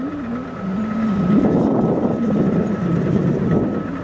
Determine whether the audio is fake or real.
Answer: real